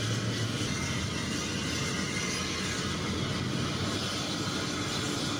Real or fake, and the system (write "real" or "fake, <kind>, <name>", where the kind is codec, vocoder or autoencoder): real